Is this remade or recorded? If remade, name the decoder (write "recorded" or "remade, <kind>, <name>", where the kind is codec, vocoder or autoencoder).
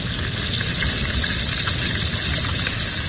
recorded